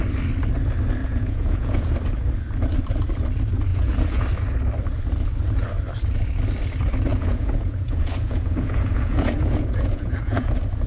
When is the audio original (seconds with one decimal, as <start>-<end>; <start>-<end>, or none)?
0.0-1.0; 1.9-3.7; 4.2-7.1; 10.5-10.9